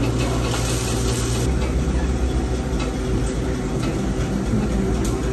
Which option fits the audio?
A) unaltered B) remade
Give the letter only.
A